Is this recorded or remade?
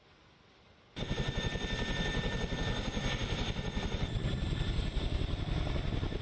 recorded